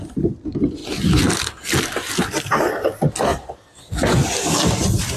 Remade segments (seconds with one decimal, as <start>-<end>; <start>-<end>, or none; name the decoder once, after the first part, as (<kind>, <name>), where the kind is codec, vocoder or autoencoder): 3.3-4.8 (vocoder, BigVGAN v2)